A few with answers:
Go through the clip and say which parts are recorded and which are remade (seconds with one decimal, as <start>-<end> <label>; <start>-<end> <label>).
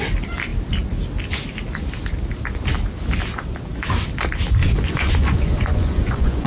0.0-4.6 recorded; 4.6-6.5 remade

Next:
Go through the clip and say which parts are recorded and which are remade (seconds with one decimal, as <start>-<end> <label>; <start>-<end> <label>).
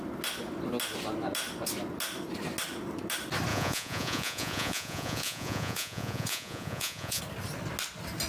0.0-3.5 recorded; 3.5-7.2 remade; 7.2-8.3 recorded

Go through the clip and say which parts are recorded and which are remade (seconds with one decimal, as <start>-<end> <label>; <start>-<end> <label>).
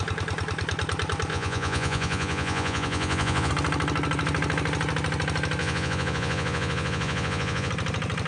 0.0-1.3 recorded; 1.3-3.5 remade; 3.5-5.6 recorded; 5.6-7.7 remade; 7.7-8.3 recorded